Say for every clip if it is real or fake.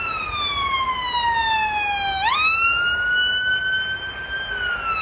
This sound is real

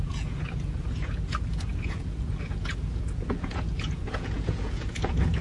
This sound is fake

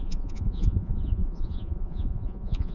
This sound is fake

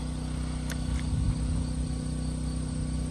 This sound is real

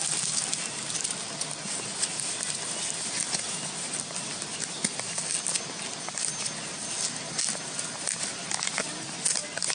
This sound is real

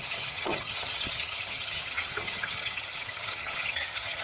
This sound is fake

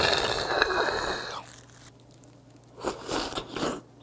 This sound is real